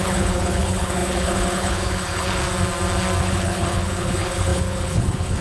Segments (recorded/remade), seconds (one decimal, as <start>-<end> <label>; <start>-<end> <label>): 0.0-2.4 remade; 2.4-3.2 recorded; 3.2-5.4 remade